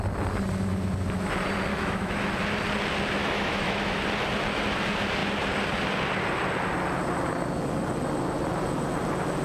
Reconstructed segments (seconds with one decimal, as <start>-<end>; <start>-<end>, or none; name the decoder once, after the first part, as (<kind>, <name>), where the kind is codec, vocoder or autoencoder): 1.7-2.3 (autoencoder, DAC-VAE); 3.2-4.0